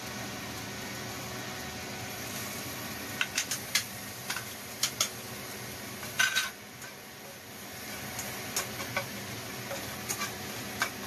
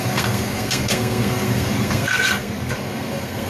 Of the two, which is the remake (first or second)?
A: second